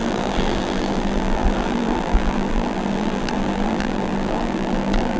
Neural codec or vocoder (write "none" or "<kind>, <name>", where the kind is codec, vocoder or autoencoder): vocoder, BigVGAN v2